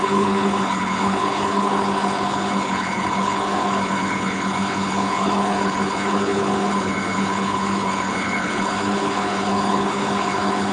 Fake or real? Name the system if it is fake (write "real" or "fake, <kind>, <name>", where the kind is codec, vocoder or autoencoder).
fake, codec, HILCodec